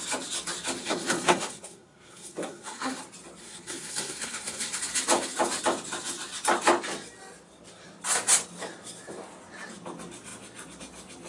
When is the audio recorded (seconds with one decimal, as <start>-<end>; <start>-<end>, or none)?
0.0-0.8; 3.0-3.4; 4.8-11.3